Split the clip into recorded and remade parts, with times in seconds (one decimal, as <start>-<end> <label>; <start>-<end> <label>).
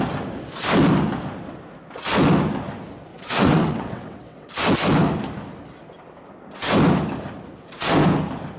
0.0-3.1 recorded; 3.1-4.5 remade; 4.5-8.6 recorded